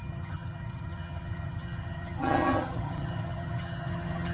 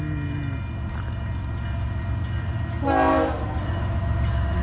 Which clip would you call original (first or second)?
second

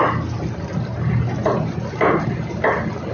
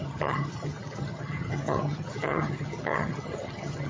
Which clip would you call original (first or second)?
first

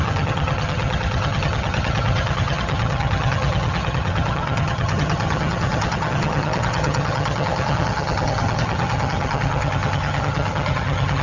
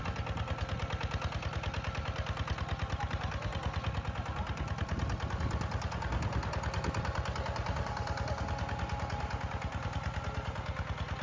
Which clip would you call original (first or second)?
second